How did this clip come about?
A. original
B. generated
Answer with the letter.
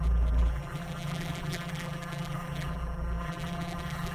B